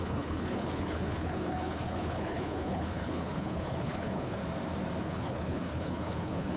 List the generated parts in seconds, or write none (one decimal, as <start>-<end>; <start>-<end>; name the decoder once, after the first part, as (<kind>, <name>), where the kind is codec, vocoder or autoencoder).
0.0-4.4 (codec, HILCodec); 5.0-6.6